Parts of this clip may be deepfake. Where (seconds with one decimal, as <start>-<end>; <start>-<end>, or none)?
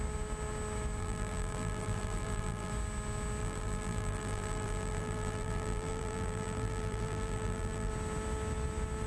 1.0-2.7; 3.4-7.9